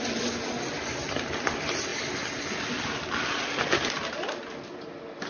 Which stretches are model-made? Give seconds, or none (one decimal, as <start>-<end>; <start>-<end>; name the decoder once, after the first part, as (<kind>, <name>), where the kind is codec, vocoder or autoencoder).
none